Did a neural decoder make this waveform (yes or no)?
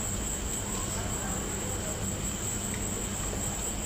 no